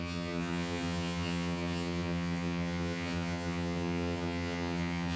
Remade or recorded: remade